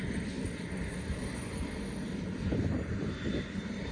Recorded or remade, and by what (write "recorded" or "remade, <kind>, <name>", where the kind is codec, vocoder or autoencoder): recorded